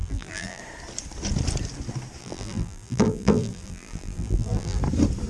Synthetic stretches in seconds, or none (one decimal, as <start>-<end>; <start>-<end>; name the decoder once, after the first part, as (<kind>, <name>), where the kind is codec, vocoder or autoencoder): 0.0-0.6 (vocoder, BigVGAN v2); 2.2-4.8